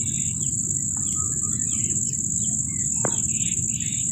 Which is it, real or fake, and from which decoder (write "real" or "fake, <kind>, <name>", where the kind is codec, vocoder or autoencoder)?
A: real